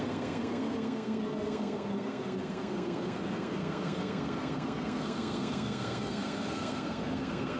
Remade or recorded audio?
remade